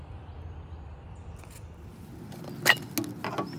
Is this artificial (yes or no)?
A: no